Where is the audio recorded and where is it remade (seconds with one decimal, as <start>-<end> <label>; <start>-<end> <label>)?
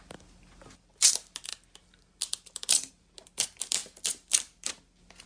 0.0-5.3 recorded